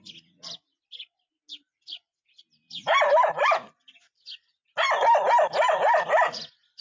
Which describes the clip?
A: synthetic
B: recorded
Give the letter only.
B